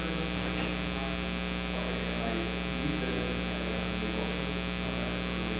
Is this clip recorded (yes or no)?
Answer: yes